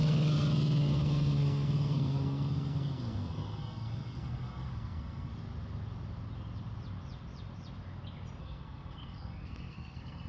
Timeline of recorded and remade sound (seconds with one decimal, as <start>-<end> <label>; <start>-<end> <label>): 0.0-5.3 remade; 5.3-8.4 recorded; 8.4-10.3 remade